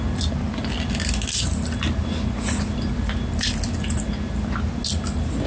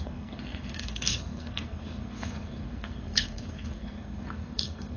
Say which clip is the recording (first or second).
first